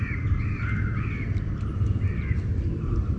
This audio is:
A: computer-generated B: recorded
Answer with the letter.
B